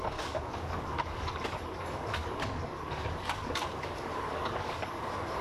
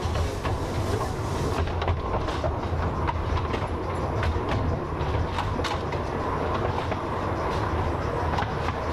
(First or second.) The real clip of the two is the second